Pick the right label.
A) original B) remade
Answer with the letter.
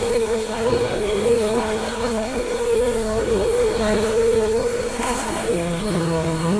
B